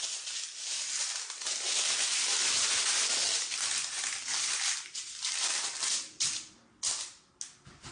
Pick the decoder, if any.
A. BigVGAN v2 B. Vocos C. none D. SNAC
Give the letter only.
C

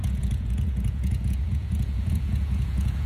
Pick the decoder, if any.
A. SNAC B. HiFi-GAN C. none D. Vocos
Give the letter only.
D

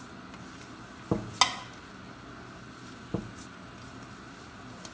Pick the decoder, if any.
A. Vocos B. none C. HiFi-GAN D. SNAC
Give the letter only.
B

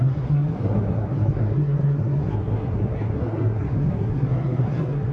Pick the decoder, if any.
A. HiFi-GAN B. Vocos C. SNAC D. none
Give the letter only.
C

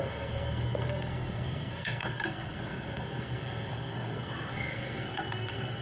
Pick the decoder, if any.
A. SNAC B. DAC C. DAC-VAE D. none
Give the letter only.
A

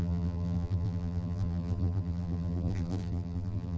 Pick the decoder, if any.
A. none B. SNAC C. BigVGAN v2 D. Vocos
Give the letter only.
C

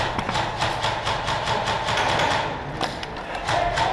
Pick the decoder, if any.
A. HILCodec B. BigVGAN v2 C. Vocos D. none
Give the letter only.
D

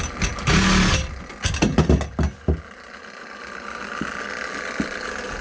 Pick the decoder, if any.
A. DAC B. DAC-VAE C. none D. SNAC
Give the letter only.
C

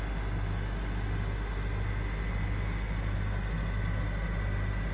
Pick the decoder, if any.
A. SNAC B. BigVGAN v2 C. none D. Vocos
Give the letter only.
C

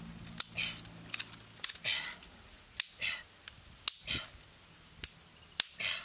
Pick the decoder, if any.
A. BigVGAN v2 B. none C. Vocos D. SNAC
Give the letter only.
B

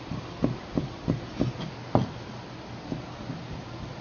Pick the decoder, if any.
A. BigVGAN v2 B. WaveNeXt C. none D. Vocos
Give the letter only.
C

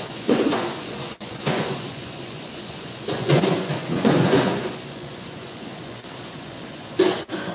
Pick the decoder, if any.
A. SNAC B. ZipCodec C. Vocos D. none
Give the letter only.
C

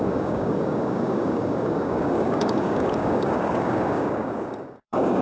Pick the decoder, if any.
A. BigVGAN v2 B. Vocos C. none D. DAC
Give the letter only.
D